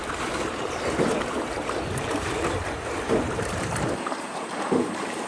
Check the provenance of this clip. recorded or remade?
remade